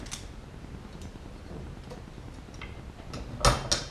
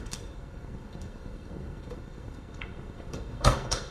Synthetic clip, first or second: second